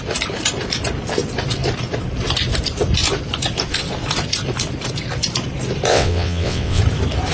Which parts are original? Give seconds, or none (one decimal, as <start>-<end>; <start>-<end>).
0.0-5.9; 6.8-7.3